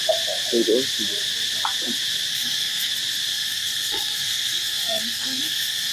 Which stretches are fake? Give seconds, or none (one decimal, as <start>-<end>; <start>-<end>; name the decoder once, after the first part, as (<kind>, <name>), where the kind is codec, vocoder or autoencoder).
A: 2.3-2.9 (codec, SNAC); 3.3-5.9